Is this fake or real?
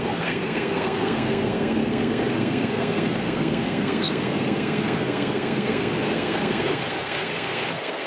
fake